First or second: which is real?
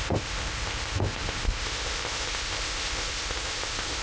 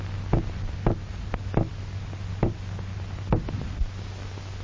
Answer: second